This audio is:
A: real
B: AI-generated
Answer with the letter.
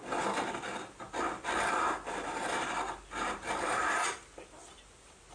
A